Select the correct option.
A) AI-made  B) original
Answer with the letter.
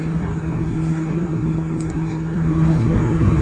A